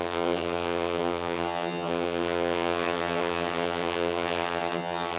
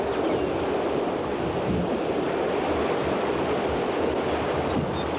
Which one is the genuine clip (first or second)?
second